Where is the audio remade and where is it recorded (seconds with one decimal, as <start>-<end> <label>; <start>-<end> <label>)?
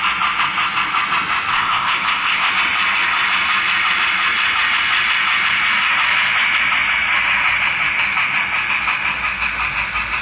0.0-1.5 recorded; 1.5-2.5 remade; 2.5-10.2 recorded